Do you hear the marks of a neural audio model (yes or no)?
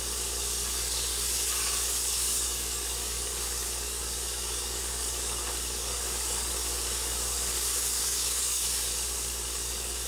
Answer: yes